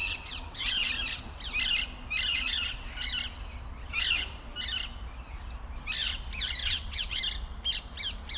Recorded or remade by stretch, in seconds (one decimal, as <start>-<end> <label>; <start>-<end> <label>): 0.0-0.9 remade; 0.9-2.3 recorded; 2.3-2.9 remade; 2.9-6.6 recorded; 6.6-7.2 remade; 7.2-8.4 recorded